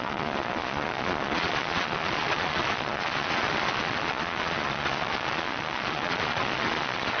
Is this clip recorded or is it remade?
remade